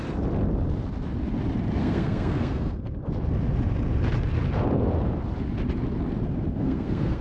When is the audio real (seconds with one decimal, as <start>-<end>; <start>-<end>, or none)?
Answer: 0.0-1.8; 3.1-6.5